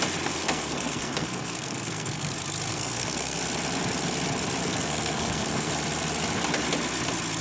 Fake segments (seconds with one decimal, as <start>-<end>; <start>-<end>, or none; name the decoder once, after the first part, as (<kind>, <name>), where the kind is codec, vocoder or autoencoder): 0.4-2.3 (codec, SNAC); 2.7-3.4; 4.6-5.7

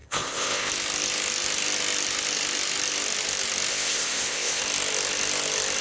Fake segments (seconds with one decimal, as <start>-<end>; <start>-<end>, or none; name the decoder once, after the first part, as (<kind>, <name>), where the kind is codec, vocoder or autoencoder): 0.0-0.7 (codec, ZipCodec); 3.7-4.6

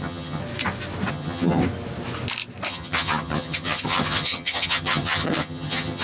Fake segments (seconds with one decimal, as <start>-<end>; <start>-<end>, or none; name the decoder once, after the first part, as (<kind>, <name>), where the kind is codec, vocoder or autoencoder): 0.0-0.4 (vocoder, HiFi-GAN); 1.1-1.6; 2.7-6.0

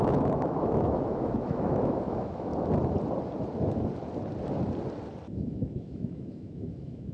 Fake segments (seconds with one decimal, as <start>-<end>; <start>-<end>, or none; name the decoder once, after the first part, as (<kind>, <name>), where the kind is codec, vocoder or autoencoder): 0.0-2.5 (autoencoder, DAC-VAE); 5.3-7.1

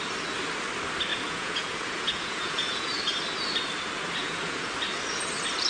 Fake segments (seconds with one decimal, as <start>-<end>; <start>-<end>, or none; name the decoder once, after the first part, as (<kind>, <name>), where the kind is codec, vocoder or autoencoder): 1.1-3.0 (vocoder, Vocos); 4.2-4.7

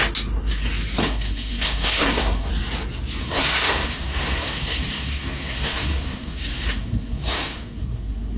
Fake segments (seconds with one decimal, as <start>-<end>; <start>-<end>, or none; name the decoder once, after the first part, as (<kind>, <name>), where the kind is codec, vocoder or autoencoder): 1.0-2.5 (codec, SNAC); 3.2-8.4

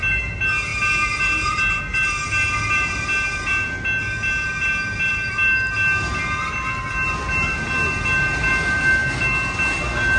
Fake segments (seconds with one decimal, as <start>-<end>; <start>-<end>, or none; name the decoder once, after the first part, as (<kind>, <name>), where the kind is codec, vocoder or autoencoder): none

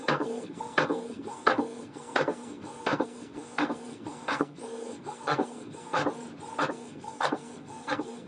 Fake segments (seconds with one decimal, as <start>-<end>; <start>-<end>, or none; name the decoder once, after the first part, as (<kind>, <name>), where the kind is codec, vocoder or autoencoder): 0.0-6.0 (codec, SNAC); 6.7-8.3